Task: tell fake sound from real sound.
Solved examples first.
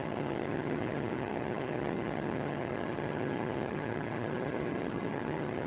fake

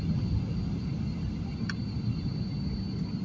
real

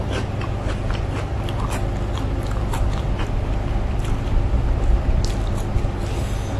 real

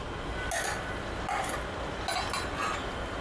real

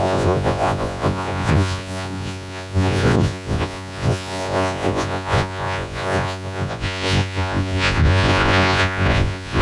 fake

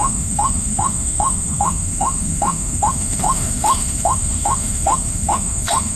fake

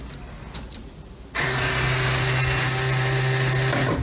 real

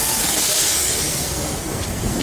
fake